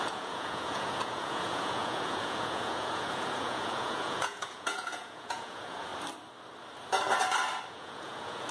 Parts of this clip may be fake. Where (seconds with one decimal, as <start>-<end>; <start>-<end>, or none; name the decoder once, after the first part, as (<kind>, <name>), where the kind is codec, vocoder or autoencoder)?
0.0-5.9 (vocoder, Vocos); 7.7-8.5